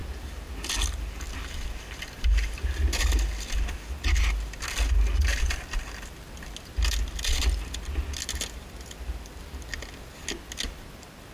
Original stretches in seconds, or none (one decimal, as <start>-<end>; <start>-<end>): 0.0-11.3

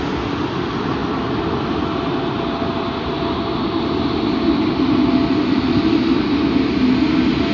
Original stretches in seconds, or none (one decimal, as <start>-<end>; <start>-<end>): 0.0-7.5